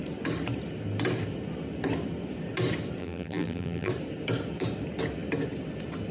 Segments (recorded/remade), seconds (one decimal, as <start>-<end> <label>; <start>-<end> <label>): 0.0-3.0 recorded; 3.0-3.9 remade; 3.9-6.1 recorded